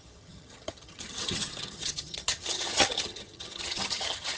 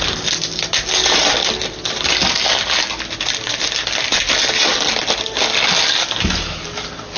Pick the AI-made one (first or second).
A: first